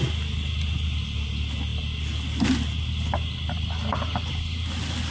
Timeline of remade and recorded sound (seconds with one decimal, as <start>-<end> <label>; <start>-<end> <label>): 0.0-5.1 recorded